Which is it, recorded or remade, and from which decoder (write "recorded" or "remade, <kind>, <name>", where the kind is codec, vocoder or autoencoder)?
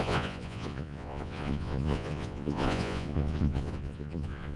remade, vocoder, Vocos